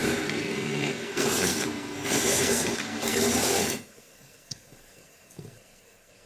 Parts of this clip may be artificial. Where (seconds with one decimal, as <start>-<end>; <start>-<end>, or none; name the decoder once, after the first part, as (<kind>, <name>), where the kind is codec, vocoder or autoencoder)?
0.0-6.3 (codec, SNAC)